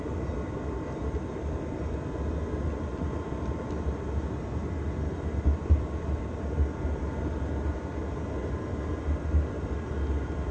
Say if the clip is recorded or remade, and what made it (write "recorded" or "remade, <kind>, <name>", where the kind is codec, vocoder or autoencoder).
recorded